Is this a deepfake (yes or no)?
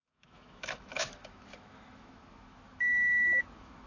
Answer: yes